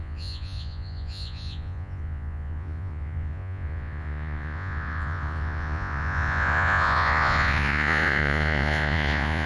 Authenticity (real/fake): fake